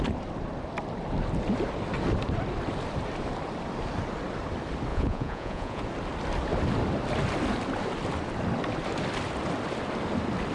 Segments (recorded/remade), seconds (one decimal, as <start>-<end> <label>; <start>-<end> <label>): 0.0-4.9 recorded; 4.9-5.8 remade; 5.8-10.5 recorded